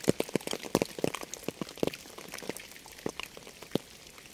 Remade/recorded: recorded